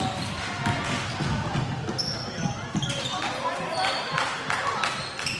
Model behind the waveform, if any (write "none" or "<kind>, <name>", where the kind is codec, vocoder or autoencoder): none